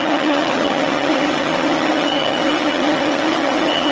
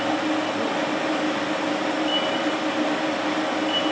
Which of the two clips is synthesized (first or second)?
first